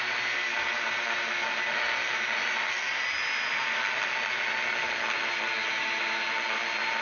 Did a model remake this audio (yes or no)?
no